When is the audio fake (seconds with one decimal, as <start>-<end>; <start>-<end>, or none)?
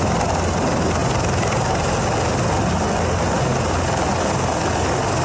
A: none